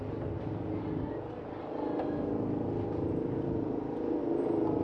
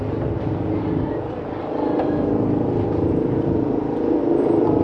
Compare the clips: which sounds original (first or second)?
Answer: first